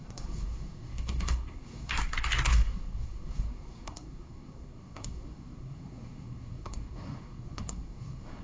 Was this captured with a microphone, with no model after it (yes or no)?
no